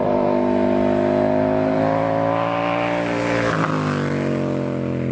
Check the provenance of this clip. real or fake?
real